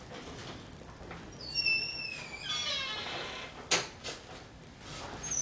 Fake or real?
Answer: real